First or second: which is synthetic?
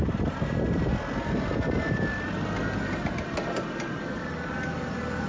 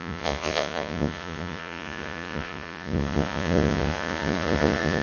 second